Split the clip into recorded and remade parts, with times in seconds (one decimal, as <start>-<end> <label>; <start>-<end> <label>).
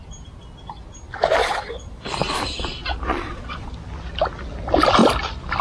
0.0-1.4 recorded; 1.4-2.0 remade; 2.0-3.1 recorded; 3.1-3.7 remade; 3.7-5.6 recorded